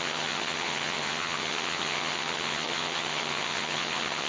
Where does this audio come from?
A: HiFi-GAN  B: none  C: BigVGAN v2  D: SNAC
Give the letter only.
A